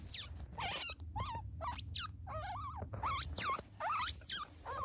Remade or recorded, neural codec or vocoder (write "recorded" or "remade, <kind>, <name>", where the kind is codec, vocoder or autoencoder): recorded